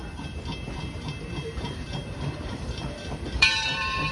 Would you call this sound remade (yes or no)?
yes